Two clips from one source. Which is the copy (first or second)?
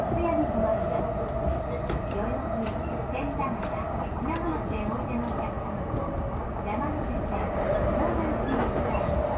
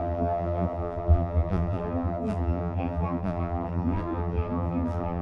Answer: second